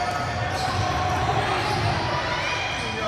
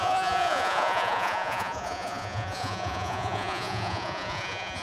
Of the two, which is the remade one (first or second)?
second